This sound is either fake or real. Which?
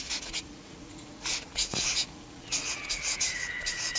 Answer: fake